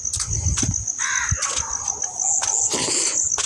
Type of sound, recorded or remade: recorded